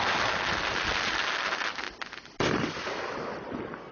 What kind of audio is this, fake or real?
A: real